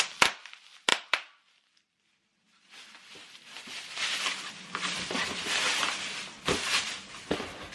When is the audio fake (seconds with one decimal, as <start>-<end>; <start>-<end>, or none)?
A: 0.9-5.5